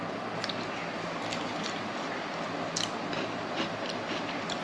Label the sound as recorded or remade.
recorded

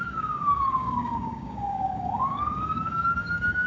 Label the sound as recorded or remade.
remade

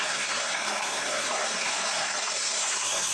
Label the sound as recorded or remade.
remade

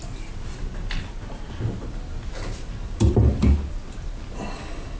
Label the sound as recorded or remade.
recorded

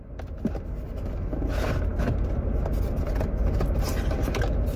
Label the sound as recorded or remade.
recorded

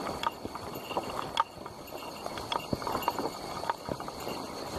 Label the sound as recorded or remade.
recorded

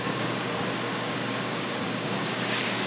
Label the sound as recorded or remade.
remade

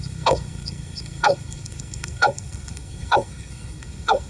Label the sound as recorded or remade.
remade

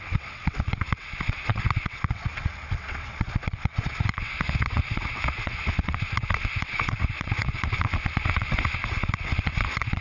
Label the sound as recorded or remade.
remade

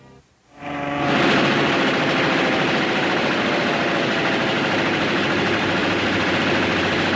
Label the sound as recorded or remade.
recorded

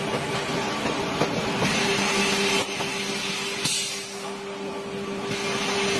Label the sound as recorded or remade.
recorded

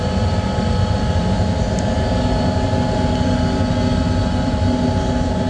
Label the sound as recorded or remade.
recorded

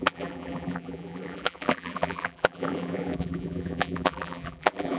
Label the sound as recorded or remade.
remade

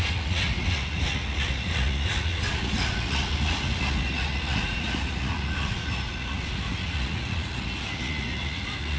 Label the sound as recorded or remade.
remade